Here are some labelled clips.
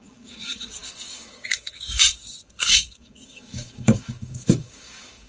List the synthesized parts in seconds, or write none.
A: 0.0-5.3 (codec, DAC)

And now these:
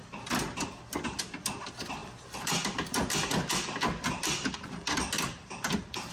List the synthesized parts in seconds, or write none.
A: none

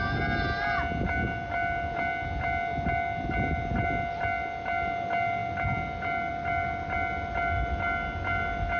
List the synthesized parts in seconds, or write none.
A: none

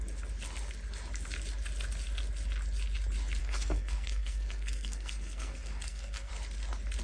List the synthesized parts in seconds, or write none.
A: 3.4-6.3 (codec, SNAC)

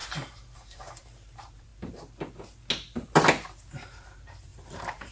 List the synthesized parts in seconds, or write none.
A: 0.0-1.7 (vocoder, BigVGAN v2); 3.7-5.1

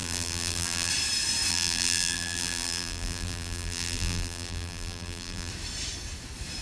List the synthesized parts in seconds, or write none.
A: 0.0-0.9 (vocoder, BigVGAN v2); 1.5-5.5